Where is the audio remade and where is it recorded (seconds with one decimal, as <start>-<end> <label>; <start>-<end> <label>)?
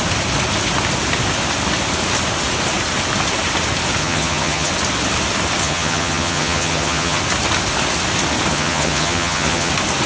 0.0-4.0 recorded; 4.0-4.7 remade; 4.7-5.6 recorded; 5.6-7.2 remade; 7.2-8.5 recorded; 8.5-9.7 remade; 9.7-10.1 recorded